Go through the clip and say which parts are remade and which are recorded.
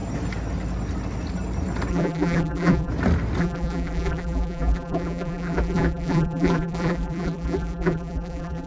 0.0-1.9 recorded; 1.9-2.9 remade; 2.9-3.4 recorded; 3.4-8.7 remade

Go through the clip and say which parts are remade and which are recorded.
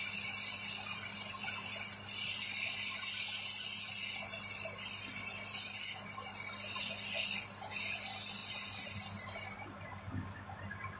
0.0-11.0 recorded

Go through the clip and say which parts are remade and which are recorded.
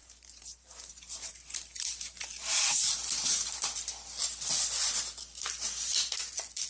0.0-1.3 remade; 1.3-6.7 recorded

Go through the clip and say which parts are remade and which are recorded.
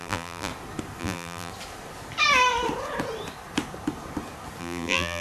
0.0-0.5 remade; 0.5-1.0 recorded; 1.0-1.5 remade; 1.5-4.6 recorded; 4.6-5.2 remade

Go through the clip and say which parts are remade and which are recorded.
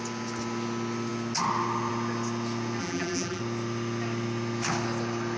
0.0-2.8 recorded; 2.8-3.4 remade; 3.4-5.4 recorded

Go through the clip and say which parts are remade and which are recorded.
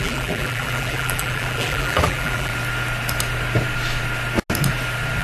0.0-2.5 remade; 2.5-5.2 recorded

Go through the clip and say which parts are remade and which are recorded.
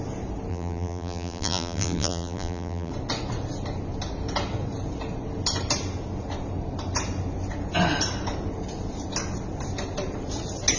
0.0-0.5 recorded; 0.5-2.9 remade; 2.9-10.8 recorded